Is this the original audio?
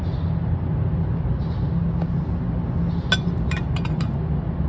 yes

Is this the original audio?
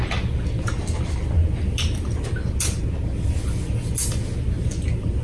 yes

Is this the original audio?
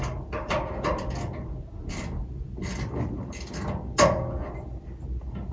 yes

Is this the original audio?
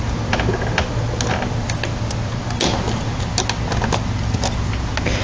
yes